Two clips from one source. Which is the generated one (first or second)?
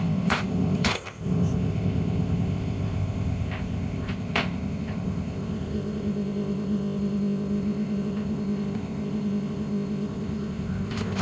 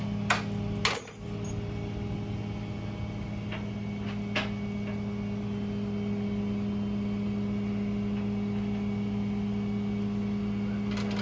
first